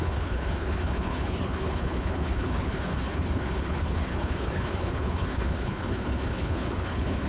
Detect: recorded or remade remade